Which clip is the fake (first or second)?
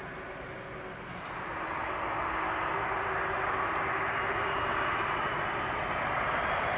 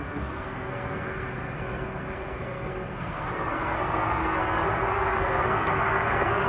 second